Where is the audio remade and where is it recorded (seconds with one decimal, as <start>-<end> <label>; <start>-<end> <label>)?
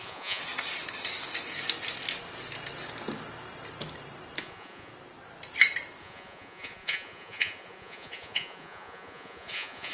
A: 0.0-0.4 remade; 0.4-4.4 recorded; 4.4-4.9 remade; 4.9-6.0 recorded; 6.0-9.9 remade